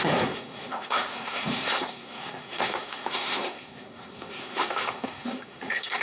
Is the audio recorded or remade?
remade